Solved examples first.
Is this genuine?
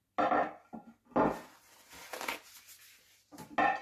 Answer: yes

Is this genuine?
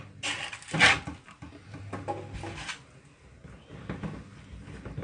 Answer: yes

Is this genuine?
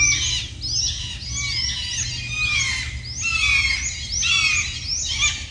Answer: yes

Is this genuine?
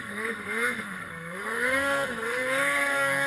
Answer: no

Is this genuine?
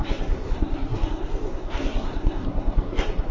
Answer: no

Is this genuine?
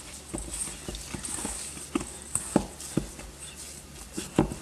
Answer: yes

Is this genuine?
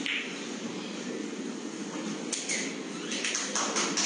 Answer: yes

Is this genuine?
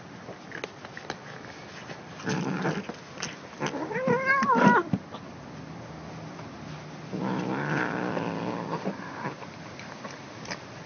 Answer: yes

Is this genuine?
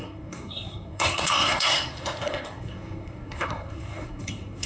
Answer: no